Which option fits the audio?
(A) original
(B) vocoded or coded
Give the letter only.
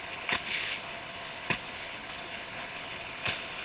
B